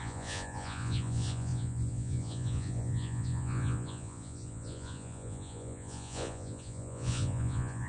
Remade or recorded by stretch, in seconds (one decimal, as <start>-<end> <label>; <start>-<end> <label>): 0.0-7.9 remade